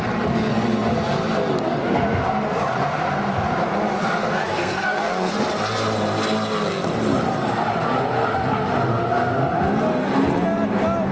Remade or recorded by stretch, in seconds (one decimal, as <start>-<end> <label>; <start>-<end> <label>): 0.0-4.5 recorded; 4.5-5.3 remade; 5.3-11.1 recorded